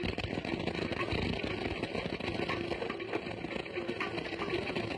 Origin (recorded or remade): recorded